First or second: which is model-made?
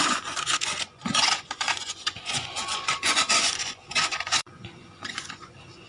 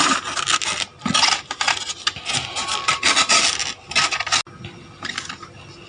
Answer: first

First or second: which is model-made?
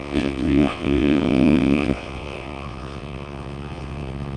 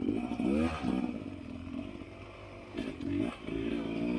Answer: first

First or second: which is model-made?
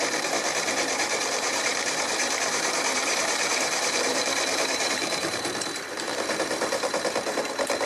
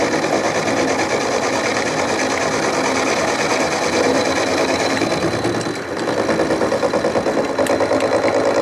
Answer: first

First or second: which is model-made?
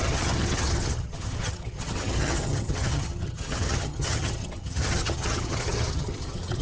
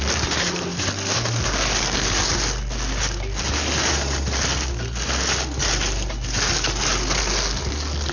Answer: first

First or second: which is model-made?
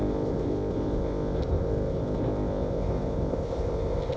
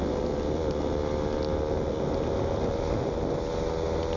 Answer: first